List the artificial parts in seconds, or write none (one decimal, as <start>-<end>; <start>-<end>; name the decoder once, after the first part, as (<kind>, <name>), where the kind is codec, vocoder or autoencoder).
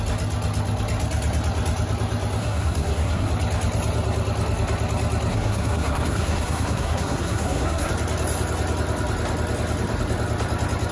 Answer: 2.4-3.3 (codec, SNAC); 5.3-7.9